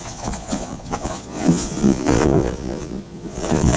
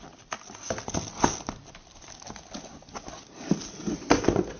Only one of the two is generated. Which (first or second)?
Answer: first